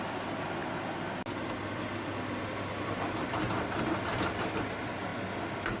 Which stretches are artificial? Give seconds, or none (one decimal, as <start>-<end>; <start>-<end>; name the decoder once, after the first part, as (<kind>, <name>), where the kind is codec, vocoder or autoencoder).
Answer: none